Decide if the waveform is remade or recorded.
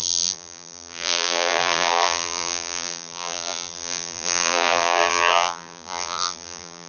remade